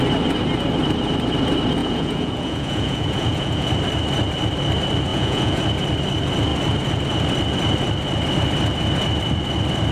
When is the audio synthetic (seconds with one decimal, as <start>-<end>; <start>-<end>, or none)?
1.8-3.7; 5.1-5.6